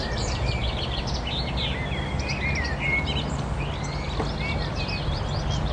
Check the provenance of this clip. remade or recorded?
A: remade